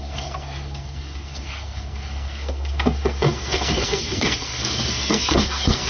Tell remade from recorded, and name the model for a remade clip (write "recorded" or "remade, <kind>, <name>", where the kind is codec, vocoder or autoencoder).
remade, codec, SNAC